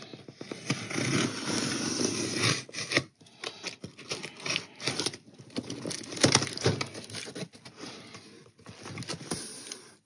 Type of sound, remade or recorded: recorded